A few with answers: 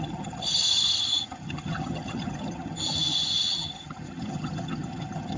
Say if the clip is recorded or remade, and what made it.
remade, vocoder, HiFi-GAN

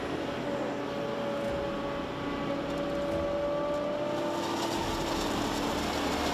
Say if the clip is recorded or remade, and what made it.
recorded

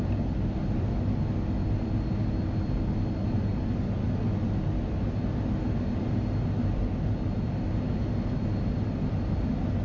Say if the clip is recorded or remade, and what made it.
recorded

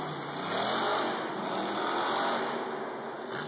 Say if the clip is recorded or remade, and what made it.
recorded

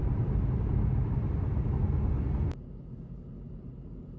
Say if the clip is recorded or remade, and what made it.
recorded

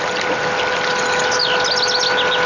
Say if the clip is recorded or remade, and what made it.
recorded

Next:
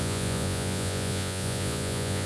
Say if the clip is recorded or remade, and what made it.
remade, vocoder, Vocos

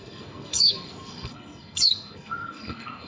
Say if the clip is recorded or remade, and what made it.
remade, codec, SNAC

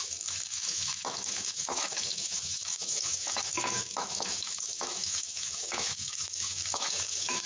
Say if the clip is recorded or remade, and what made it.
remade, autoencoder, DAC-VAE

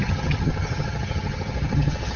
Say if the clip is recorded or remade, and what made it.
remade, vocoder, HiFi-GAN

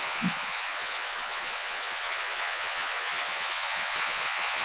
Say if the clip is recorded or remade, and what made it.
remade, vocoder, Vocos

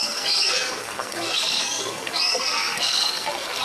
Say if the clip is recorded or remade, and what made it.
remade, codec, SNAC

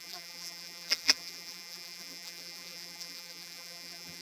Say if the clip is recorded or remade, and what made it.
remade, vocoder, BigVGAN v2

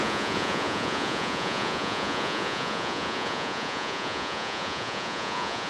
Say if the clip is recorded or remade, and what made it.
remade, vocoder, Vocos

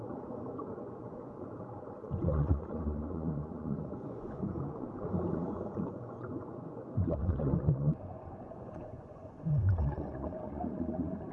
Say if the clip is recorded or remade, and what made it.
remade, vocoder, Vocos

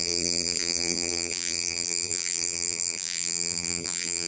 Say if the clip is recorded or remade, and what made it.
remade, vocoder, BigVGAN v2